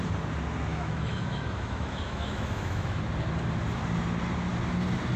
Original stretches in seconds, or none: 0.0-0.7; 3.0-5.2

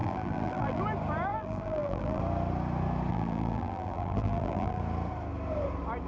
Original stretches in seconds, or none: 0.8-1.3; 2.2-3.1; 4.8-6.1

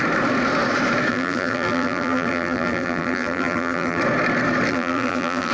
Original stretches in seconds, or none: 0.0-1.1; 4.0-4.7

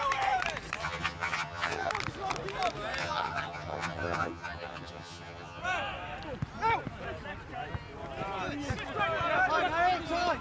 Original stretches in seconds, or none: 0.0-0.8; 1.9-3.0; 5.6-10.4

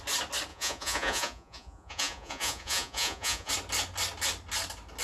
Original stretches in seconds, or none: 0.0-0.5; 3.5-5.0

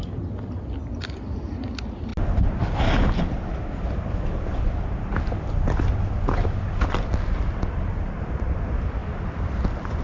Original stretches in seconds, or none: 0.0-10.0